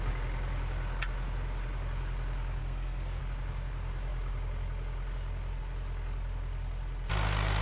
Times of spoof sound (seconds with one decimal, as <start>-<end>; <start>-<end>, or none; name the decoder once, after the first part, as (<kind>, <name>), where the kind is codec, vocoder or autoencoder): 2.6-3.2 (codec, SNAC)